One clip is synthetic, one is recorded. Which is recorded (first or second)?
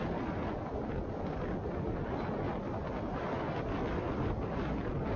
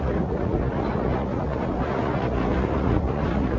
first